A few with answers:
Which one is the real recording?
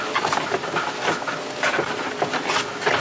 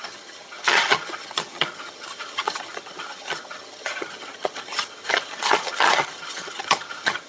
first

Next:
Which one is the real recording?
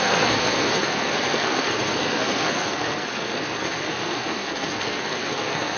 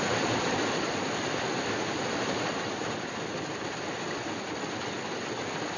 second